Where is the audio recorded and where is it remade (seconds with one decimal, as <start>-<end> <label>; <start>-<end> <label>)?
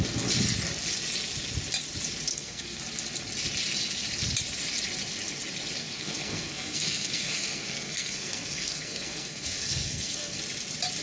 0.0-2.3 recorded; 2.3-2.8 remade; 2.8-5.8 recorded; 5.8-10.4 remade; 10.4-11.0 recorded